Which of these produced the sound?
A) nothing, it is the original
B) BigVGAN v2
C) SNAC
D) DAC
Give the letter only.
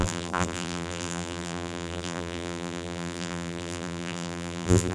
B